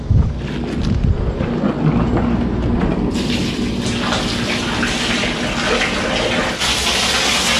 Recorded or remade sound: recorded